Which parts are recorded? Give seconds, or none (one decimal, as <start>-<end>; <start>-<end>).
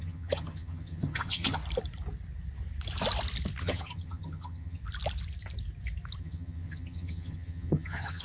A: 1.6-3.6; 4.8-6.2